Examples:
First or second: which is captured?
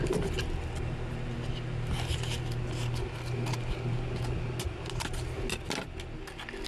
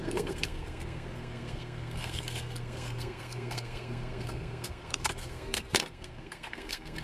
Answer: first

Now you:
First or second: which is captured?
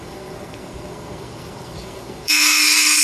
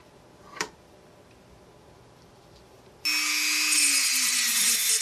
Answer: second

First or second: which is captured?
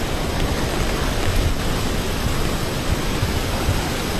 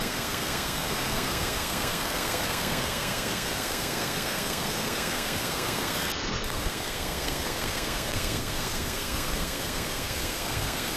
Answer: first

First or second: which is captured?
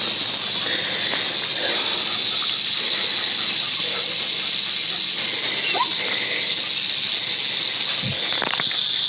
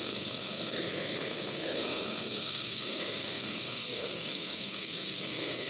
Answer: first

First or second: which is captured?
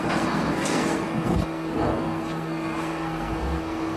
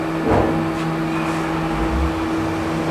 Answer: second